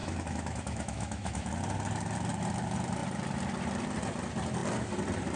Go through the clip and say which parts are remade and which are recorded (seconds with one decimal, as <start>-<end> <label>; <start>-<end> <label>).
0.0-1.5 remade; 1.5-5.4 recorded